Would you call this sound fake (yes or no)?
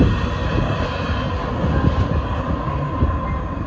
no